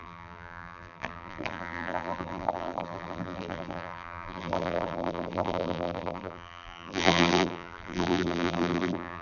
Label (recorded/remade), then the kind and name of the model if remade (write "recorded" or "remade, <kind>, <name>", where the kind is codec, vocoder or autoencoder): remade, vocoder, BigVGAN v2